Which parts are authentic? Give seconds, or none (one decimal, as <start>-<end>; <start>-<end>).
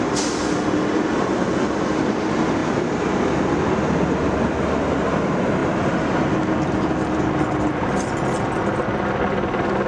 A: 0.0-9.9